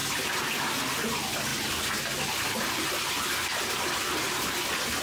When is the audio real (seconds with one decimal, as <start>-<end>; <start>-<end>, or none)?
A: 0.0-5.0